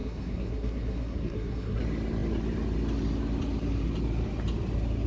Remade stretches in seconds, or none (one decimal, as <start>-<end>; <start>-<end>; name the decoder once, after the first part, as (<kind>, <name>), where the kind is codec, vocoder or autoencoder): 0.0-1.8 (codec, SNAC)